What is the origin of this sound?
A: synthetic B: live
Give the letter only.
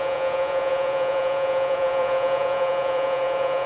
A